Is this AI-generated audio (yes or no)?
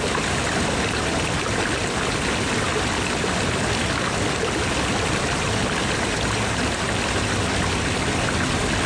no